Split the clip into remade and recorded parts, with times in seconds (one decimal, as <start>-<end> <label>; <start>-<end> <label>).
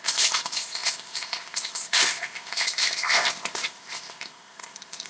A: 0.0-5.1 remade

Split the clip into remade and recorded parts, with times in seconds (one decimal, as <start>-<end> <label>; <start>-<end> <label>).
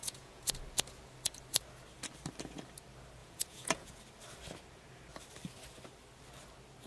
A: 0.0-0.5 remade; 0.5-3.2 recorded; 3.2-4.0 remade; 4.0-6.9 recorded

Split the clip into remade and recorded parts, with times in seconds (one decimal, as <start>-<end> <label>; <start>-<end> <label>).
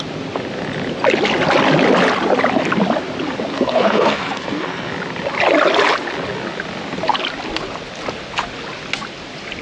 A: 0.0-3.5 recorded; 3.5-4.9 remade; 4.9-9.6 recorded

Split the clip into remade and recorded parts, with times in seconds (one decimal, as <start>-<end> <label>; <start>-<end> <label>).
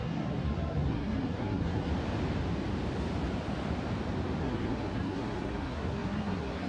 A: 0.0-1.9 remade; 1.9-4.4 recorded; 4.4-6.7 remade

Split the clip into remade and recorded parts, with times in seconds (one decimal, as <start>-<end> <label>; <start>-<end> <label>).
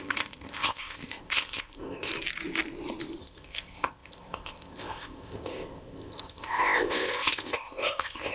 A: 0.0-2.1 remade; 2.1-3.2 recorded; 3.2-8.3 remade